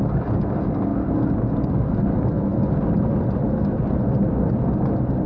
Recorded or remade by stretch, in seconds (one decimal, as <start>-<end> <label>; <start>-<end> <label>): 0.0-5.3 recorded